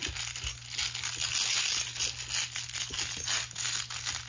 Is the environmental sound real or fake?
real